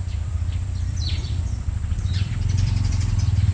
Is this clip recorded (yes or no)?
no